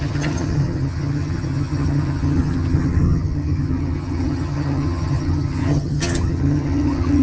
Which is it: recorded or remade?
remade